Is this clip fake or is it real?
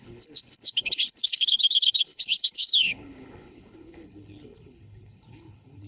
fake